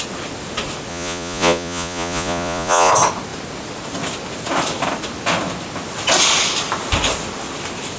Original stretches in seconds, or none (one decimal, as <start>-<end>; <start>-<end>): 0.0-0.9; 2.9-8.0